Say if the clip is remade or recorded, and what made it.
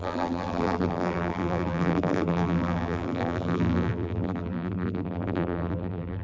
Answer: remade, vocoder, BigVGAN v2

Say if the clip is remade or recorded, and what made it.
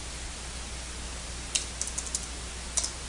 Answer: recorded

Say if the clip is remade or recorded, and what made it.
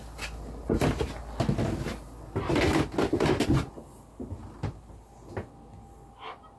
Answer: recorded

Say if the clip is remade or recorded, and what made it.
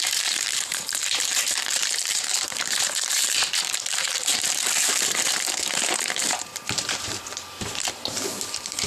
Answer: remade, vocoder, BigVGAN v2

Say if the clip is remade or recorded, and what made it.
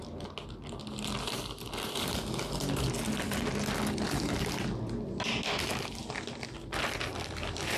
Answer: recorded